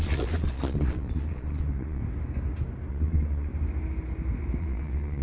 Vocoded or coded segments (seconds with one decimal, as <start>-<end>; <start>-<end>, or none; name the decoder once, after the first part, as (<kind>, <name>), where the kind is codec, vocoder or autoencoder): 0.0-2.0 (vocoder, Vocos); 2.9-3.5; 4.6-5.2